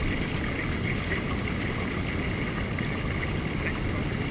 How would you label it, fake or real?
real